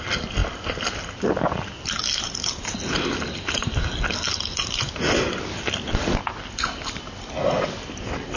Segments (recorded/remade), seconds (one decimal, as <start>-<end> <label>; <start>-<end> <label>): 0.0-8.4 recorded